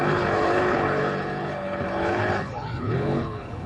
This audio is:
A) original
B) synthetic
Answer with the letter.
B